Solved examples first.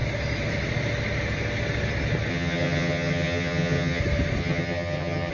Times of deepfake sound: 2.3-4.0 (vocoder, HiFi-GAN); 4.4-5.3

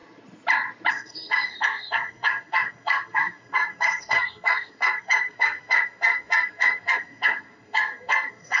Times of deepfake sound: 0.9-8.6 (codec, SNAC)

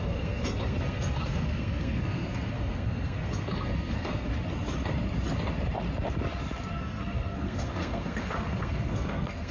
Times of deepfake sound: 0.0-4.3 (codec, SNAC); 6.8-9.5

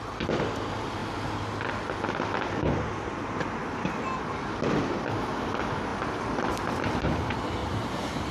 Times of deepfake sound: 7.6-8.3 (vocoder, BigVGAN v2)

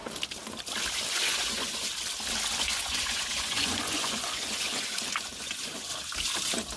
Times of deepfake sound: 1.1-1.9 (vocoder, Vocos); 2.6-5.9